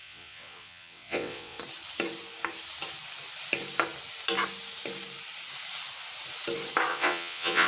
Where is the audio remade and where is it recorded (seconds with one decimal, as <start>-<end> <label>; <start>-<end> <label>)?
0.0-1.6 remade; 1.6-6.9 recorded; 6.9-7.7 remade